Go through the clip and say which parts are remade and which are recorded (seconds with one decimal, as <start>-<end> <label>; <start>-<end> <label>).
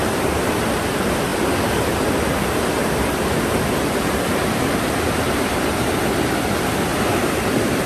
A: 0.0-0.8 remade; 0.8-6.9 recorded; 6.9-7.9 remade